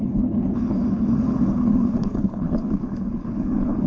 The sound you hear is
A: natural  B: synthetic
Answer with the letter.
B